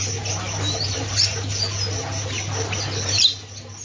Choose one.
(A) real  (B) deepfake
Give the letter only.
A